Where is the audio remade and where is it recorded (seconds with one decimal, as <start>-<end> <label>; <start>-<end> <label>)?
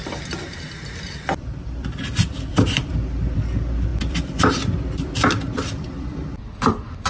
0.0-7.1 remade